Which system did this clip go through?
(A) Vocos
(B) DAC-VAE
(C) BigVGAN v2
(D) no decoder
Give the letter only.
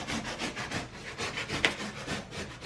D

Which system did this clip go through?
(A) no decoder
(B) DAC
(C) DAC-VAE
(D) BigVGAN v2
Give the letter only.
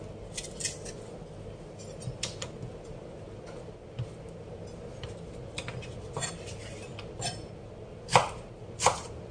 A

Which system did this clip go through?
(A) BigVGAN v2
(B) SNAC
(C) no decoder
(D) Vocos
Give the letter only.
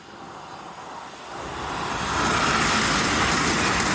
C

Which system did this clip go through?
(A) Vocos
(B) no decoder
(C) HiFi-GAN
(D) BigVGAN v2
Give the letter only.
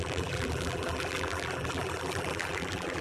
D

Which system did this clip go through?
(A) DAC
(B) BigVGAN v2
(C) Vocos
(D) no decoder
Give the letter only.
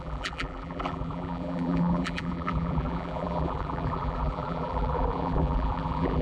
B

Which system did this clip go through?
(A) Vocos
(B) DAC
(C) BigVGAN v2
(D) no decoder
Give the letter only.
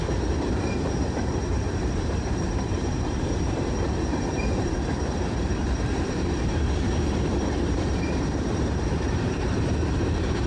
C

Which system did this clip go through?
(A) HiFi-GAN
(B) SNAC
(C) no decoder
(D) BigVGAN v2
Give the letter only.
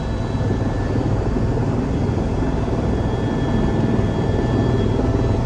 C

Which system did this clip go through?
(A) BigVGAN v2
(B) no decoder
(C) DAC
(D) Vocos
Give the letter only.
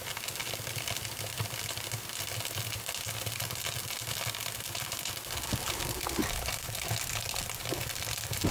B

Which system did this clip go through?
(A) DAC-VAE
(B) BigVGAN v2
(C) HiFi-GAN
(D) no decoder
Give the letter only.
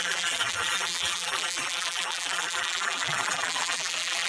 B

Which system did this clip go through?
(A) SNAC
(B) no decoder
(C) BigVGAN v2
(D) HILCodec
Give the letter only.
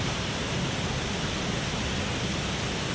B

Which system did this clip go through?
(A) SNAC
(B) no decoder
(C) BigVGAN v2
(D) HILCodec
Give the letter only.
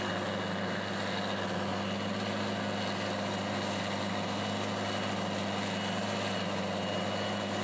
B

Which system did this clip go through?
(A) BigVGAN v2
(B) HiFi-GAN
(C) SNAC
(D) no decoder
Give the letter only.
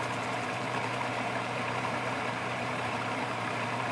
A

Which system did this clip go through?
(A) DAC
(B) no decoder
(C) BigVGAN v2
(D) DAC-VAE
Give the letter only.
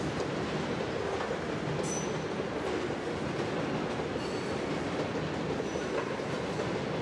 B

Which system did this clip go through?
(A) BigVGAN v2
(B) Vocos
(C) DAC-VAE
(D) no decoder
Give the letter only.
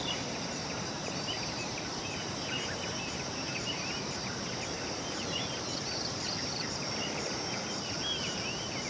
A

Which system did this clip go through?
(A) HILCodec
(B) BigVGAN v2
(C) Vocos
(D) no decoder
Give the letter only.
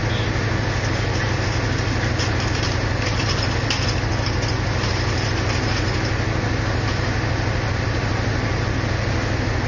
D